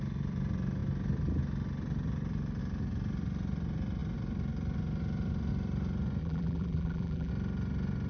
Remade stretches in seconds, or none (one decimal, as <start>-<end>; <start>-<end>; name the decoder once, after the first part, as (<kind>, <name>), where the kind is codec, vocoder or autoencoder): 6.2-7.3 (vocoder, BigVGAN v2)